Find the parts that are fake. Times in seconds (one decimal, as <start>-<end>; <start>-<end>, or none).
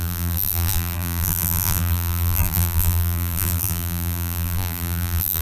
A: 0.0-5.4